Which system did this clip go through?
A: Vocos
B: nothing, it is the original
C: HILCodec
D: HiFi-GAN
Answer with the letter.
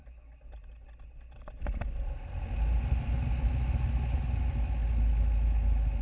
B